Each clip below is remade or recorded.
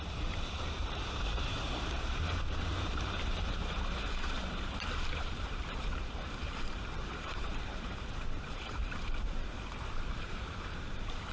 remade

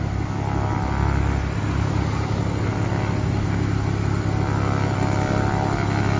recorded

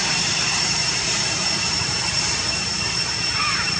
remade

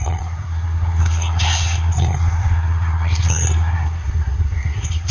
remade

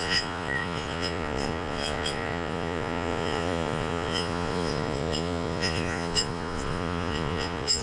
remade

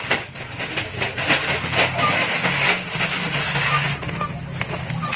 recorded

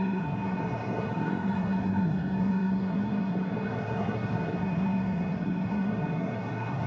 remade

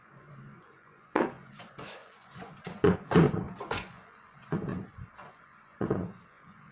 remade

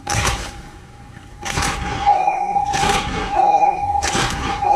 remade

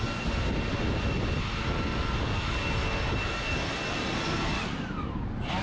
recorded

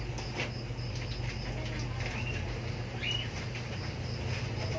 recorded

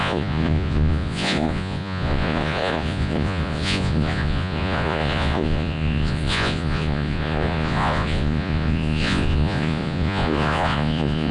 remade